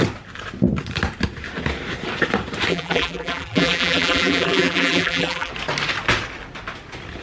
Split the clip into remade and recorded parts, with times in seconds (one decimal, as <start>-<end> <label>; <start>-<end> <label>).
0.0-2.7 recorded; 2.7-5.5 remade; 5.5-7.2 recorded

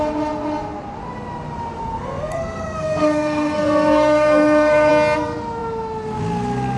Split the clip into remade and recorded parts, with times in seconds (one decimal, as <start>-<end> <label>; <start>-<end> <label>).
0.0-1.8 recorded; 1.8-4.9 remade; 4.9-6.8 recorded

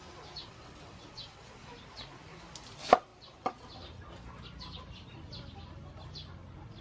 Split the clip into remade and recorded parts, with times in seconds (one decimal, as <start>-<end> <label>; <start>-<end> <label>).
0.0-0.4 recorded; 0.4-1.4 remade; 1.4-6.8 recorded

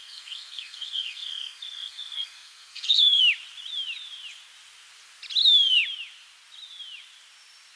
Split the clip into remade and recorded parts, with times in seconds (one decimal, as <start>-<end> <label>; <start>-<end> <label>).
0.0-3.2 remade; 3.2-7.8 recorded

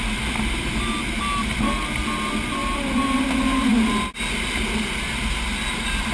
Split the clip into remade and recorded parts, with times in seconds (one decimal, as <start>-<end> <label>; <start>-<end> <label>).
0.0-2.6 recorded; 2.6-3.2 remade; 3.2-6.1 recorded